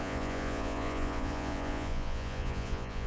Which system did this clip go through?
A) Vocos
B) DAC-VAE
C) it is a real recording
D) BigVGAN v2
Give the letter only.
A